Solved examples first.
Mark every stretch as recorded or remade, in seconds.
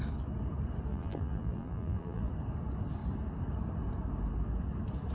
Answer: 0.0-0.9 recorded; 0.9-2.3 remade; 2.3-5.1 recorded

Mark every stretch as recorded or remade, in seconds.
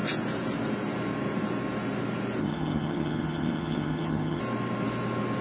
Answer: 0.0-2.4 recorded; 2.4-4.4 remade; 4.4-5.4 recorded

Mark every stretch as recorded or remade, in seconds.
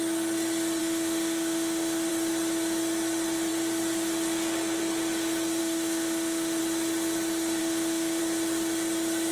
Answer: 0.0-0.8 recorded; 0.8-2.1 remade; 2.1-5.6 recorded; 5.6-6.6 remade; 6.6-7.6 recorded; 7.6-8.2 remade; 8.2-9.3 recorded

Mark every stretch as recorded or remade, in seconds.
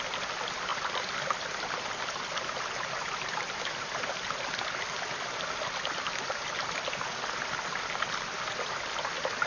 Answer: 0.0-9.5 recorded